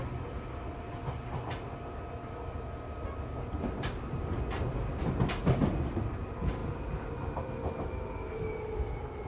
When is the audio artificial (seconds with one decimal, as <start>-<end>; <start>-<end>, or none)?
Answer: none